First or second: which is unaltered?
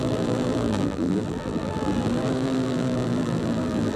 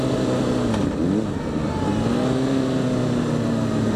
second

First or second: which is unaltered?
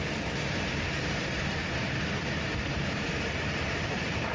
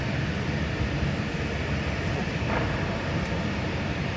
second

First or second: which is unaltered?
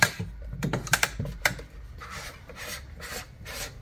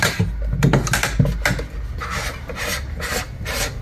second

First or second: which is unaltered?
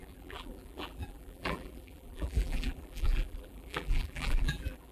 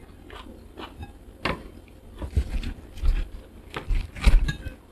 second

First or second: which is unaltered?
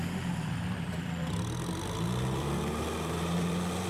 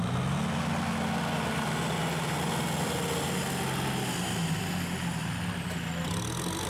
second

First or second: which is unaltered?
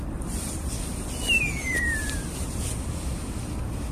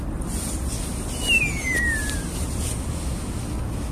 second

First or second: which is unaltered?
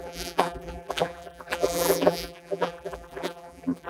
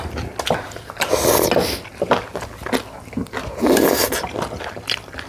second